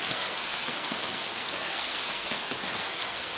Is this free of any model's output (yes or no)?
no